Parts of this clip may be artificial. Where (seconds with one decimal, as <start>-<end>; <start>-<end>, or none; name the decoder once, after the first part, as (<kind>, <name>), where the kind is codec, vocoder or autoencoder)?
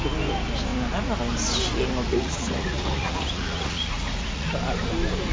2.1-4.5 (vocoder, Vocos)